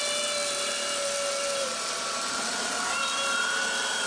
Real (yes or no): yes